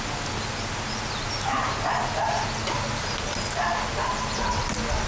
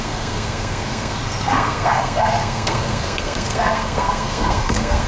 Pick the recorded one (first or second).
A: first